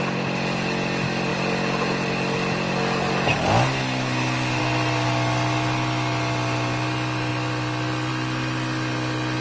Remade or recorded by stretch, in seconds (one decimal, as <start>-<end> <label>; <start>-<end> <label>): 0.0-9.4 recorded